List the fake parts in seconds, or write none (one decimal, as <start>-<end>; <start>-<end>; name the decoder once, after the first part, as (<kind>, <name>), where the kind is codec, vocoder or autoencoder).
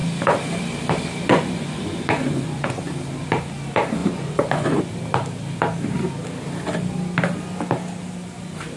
1.3-2.8 (vocoder, Vocos); 4.0-4.8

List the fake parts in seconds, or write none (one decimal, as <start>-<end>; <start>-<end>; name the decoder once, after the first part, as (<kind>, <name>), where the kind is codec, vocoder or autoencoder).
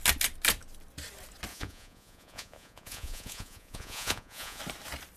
1.5-4.6 (vocoder, Vocos)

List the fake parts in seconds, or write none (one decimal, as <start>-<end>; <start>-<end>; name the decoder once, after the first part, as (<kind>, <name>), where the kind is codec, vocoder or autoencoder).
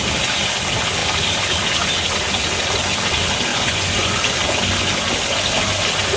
3.5-4.2 (vocoder, Vocos)